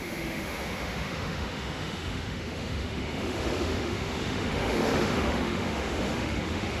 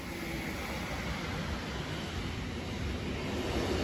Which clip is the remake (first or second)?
first